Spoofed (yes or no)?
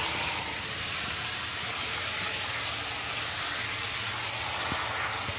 no